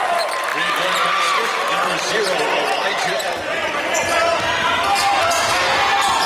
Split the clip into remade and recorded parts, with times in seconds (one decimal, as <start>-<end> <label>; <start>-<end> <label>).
0.0-4.2 remade; 4.2-5.1 recorded; 5.1-6.3 remade